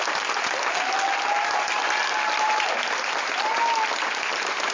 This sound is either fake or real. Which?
real